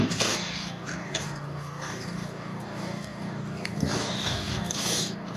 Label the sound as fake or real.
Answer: fake